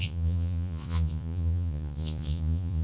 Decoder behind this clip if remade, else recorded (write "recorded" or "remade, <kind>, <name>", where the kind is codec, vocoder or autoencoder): remade, vocoder, Vocos